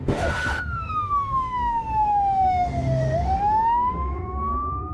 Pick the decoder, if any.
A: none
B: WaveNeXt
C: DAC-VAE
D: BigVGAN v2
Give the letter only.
C